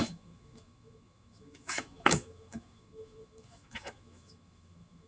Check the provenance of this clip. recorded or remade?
remade